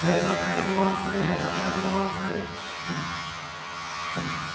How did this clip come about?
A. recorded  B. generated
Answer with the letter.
B